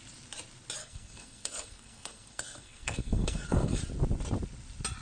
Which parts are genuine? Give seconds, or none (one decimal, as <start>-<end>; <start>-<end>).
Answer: 0.0-0.8; 3.8-5.0